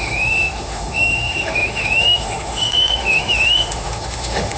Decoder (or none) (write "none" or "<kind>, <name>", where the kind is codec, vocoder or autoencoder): autoencoder, DAC-VAE